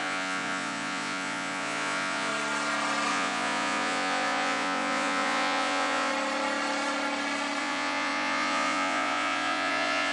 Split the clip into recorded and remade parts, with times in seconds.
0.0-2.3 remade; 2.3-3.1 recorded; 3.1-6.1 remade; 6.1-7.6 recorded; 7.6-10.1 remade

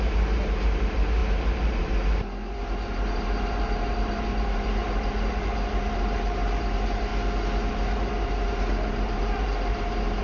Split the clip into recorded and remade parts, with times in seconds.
0.0-7.1 remade; 7.1-7.7 recorded; 7.7-10.2 remade

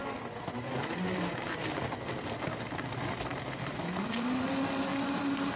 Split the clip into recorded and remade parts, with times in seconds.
0.0-5.6 recorded

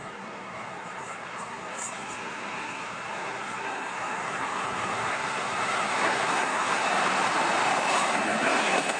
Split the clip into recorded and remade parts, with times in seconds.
0.0-7.0 remade; 7.0-7.9 recorded; 7.9-9.0 remade

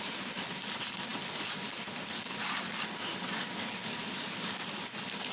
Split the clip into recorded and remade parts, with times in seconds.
0.0-5.3 recorded

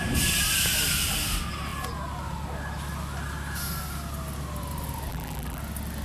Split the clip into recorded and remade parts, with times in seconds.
0.0-5.1 recorded; 5.1-5.6 remade; 5.6-6.0 recorded

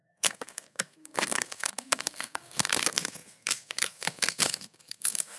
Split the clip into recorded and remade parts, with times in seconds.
0.0-5.4 remade